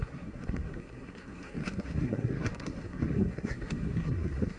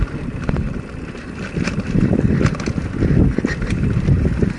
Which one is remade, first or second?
first